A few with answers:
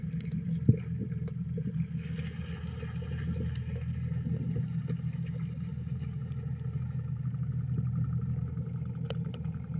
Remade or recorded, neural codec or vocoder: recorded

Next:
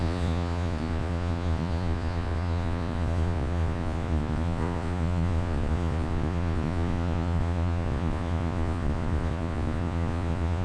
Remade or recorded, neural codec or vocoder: remade, vocoder, Vocos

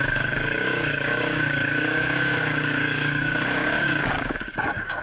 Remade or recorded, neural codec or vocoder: remade, codec, DAC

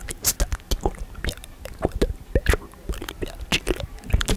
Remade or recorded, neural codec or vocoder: recorded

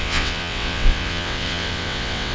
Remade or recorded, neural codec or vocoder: remade, vocoder, WaveNeXt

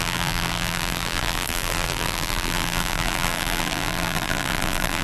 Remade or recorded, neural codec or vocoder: remade, vocoder, BigVGAN v2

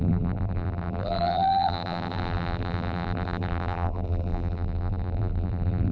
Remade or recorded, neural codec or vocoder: remade, vocoder, BigVGAN v2